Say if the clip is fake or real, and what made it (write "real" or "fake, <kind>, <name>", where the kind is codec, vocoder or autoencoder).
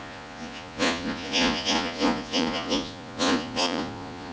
fake, vocoder, Vocos